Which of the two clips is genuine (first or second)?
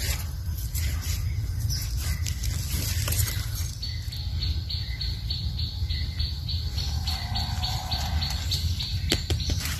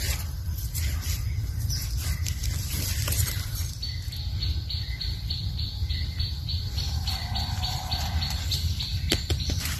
first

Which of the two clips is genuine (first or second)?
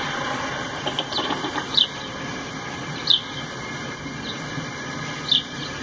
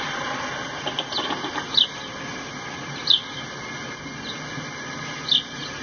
second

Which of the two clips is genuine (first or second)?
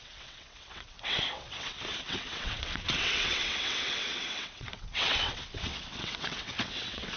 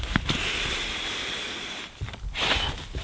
second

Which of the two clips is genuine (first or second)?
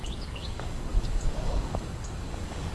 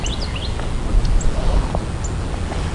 second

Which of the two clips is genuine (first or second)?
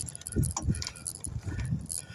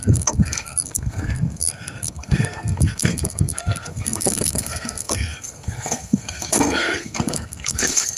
first